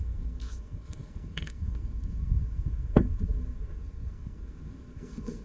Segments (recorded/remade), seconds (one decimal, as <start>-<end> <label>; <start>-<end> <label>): 0.0-5.4 remade